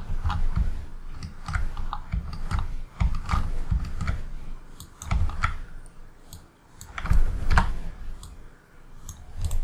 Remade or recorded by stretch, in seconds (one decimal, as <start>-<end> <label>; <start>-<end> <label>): 0.0-9.6 recorded